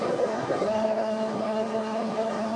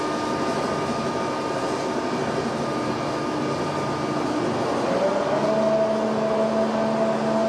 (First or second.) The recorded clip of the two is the second